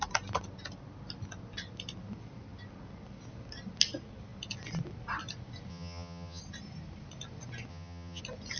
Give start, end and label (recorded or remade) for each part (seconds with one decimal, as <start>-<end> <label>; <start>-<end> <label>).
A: 0.0-5.7 recorded; 5.7-6.4 remade; 6.4-7.7 recorded; 7.7-8.2 remade; 8.2-8.6 recorded